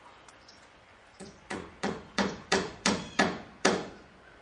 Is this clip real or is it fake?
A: fake